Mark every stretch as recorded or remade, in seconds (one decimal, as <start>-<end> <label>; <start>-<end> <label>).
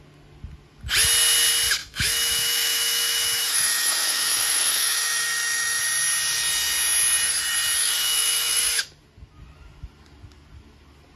0.0-1.8 recorded; 1.8-5.8 remade; 5.8-7.8 recorded; 7.8-8.8 remade; 8.8-11.2 recorded